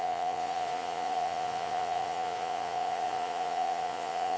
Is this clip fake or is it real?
fake